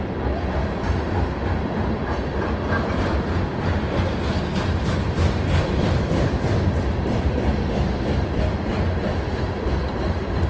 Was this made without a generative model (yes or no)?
no